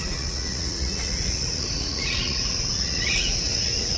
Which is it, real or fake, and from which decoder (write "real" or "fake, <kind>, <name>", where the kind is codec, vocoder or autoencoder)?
fake, vocoder, Vocos